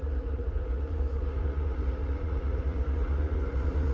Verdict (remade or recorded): remade